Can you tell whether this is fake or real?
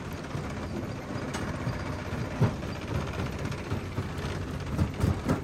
real